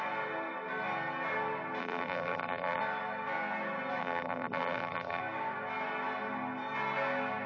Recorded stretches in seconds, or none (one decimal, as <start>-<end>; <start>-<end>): 0.0-1.8; 2.8-4.0; 5.2-7.5